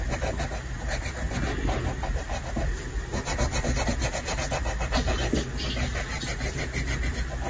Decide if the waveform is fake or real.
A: real